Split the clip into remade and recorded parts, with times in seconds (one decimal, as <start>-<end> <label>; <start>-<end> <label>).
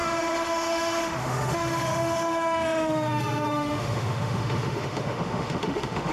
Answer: 0.0-6.1 remade